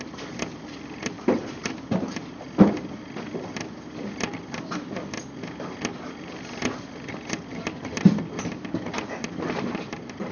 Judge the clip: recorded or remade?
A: recorded